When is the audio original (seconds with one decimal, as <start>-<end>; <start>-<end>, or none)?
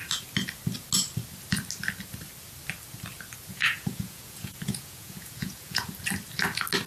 0.0-3.5; 5.9-6.9